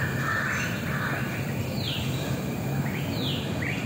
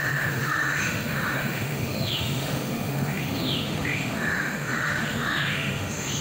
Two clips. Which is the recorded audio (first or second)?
first